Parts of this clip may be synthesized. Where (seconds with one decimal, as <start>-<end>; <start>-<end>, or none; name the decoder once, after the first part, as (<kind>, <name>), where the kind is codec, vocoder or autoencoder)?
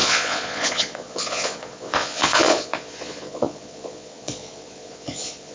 0.0-5.5 (vocoder, Vocos)